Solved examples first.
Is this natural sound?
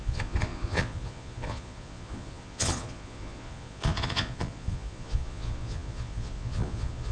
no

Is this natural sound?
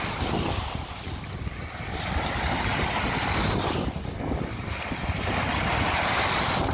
yes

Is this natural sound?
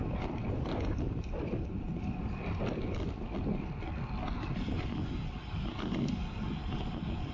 yes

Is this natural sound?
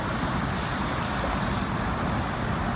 yes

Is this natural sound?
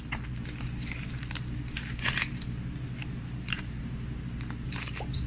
yes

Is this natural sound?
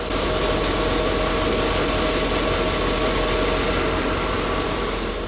yes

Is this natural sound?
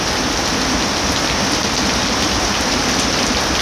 yes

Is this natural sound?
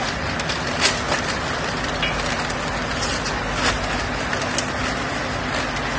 yes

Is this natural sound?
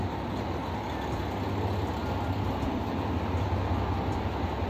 yes